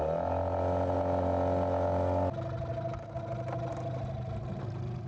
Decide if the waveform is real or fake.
real